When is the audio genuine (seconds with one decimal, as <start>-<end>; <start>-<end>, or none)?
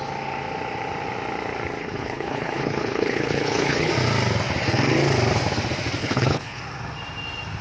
0.0-1.8; 3.9-6.0; 6.6-7.6